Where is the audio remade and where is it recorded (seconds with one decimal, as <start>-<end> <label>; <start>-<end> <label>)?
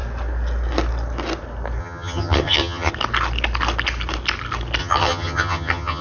0.0-1.8 recorded; 1.8-2.9 remade; 2.9-4.8 recorded; 4.8-6.0 remade